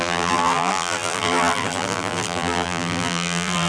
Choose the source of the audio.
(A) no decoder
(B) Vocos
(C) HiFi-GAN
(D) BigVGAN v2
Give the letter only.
D